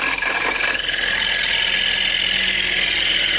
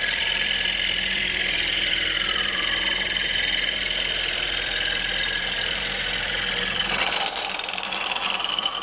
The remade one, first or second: second